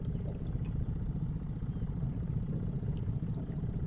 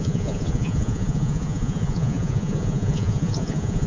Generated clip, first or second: second